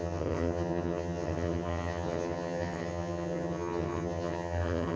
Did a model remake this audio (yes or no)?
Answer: yes